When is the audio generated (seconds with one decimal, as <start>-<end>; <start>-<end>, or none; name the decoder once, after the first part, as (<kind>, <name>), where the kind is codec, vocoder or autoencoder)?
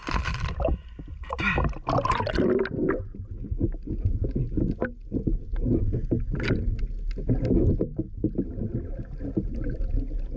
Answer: 3.8-4.6 (vocoder, BigVGAN v2)